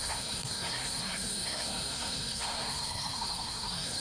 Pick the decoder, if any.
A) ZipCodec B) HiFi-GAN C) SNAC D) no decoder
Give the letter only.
C